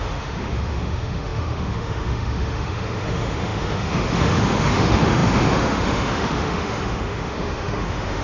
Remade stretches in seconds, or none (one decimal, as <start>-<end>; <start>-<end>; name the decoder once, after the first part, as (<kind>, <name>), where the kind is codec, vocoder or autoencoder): 0.0-8.2 (autoencoder, DAC-VAE)